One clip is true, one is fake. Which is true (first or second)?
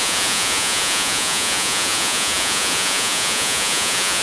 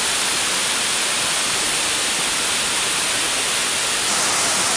second